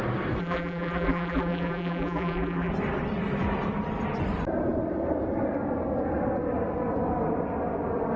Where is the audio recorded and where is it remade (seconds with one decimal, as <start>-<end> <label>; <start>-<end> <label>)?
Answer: 0.0-0.4 recorded; 0.4-2.7 remade; 2.7-8.2 recorded